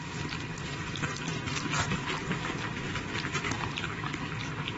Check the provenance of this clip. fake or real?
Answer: real